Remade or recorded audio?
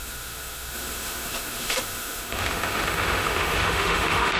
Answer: remade